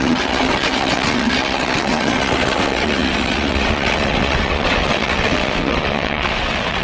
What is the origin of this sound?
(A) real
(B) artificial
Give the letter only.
B